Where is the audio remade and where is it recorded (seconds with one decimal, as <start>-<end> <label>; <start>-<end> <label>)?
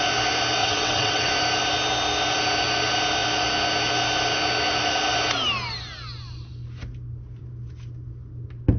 0.0-0.6 recorded; 0.6-1.3 remade; 1.3-8.8 recorded